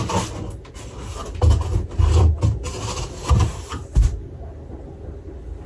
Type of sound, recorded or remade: recorded